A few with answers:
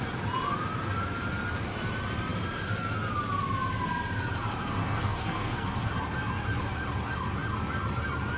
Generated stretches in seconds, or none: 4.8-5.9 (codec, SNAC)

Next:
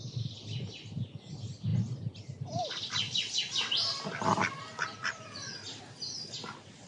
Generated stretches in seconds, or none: none

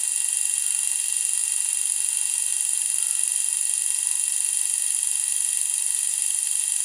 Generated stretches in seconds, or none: none

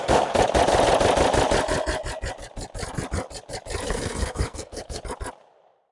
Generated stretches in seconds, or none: 0.0-0.4 (codec, SNAC); 3.9-5.0